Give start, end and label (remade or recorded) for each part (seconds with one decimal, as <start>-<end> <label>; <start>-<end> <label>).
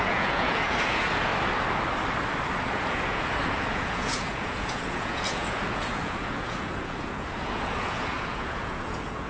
0.0-1.3 remade; 1.3-2.7 recorded; 2.7-9.3 remade